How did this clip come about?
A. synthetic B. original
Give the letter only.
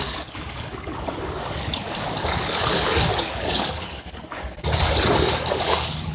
A